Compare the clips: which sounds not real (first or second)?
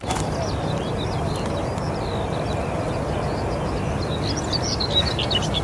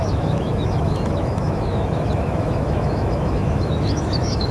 second